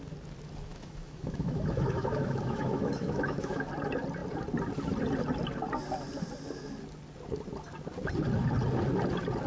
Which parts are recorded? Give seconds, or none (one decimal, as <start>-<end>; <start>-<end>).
0.0-0.7; 3.7-9.5